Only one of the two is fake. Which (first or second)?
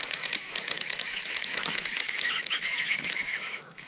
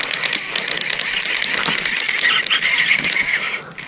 first